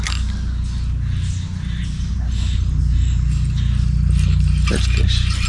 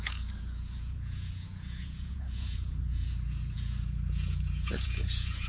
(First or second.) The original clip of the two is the first